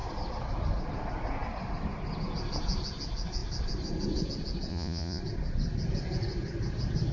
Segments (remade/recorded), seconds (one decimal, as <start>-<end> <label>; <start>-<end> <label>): 0.0-4.7 recorded; 4.7-5.2 remade; 5.2-7.1 recorded